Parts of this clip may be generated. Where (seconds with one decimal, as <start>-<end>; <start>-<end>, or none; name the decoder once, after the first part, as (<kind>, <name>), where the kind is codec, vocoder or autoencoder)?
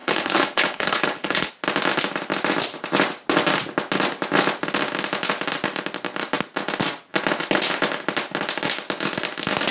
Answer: 0.0-1.5 (codec, HILCodec)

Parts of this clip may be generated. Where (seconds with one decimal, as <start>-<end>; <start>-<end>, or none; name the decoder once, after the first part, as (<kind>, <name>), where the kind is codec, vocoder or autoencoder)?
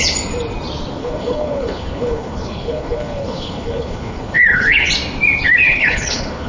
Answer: 1.0-4.9 (codec, HILCodec); 5.6-6.5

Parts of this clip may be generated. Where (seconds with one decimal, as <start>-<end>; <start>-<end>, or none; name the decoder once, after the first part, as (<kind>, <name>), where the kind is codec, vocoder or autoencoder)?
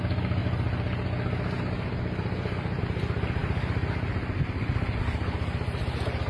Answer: none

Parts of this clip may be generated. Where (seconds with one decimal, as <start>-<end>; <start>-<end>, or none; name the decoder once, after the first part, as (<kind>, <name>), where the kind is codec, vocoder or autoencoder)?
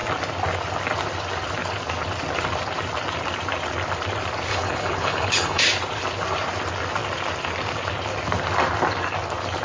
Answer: 4.5-5.6 (codec, HILCodec)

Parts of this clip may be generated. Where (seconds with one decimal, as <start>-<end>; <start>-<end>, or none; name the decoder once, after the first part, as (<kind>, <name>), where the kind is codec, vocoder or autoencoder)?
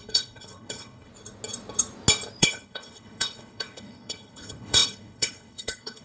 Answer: 0.0-1.1 (codec, HILCodec); 2.4-6.0